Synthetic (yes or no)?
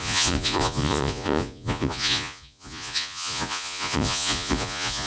yes